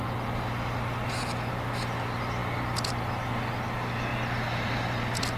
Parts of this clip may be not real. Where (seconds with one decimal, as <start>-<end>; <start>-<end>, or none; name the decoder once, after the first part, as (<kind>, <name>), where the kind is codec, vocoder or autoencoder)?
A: none